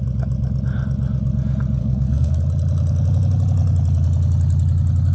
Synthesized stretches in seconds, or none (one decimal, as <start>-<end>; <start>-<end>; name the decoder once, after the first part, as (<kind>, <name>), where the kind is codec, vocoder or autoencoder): 1.8-2.4 (codec, SNAC)